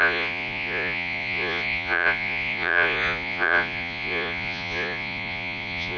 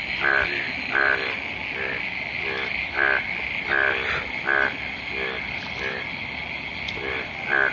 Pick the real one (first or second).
second